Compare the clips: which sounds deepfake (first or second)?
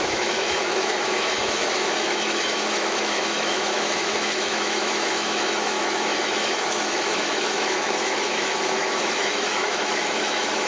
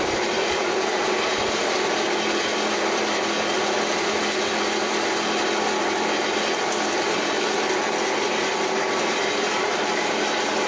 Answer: first